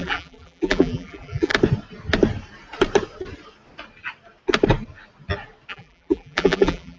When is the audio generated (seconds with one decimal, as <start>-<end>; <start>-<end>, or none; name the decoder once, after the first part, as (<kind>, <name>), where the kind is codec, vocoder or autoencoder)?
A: 0.0-1.5 (vocoder, BigVGAN v2); 5.7-7.0